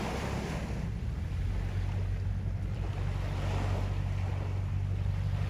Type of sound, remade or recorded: recorded